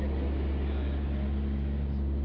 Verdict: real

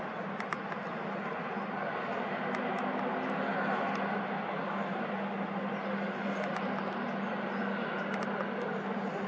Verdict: real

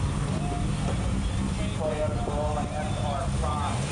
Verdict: real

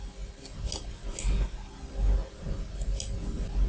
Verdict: real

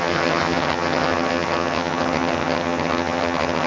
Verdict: fake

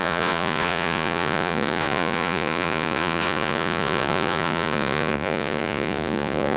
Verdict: fake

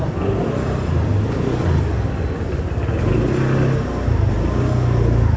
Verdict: real